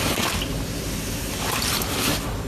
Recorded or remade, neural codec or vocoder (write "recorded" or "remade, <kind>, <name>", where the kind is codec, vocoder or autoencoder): recorded